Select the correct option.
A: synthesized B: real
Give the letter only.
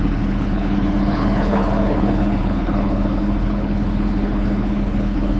A